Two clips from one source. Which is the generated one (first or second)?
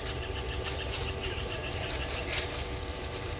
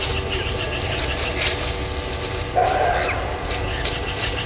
first